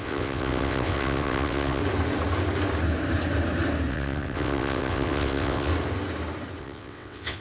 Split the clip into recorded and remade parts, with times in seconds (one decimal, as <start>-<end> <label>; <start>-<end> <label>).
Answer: 0.0-1.8 remade; 1.8-3.9 recorded; 3.9-5.7 remade; 5.7-6.6 recorded; 6.6-7.4 remade